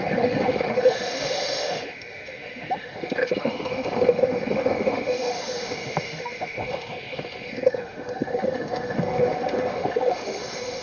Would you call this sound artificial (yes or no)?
yes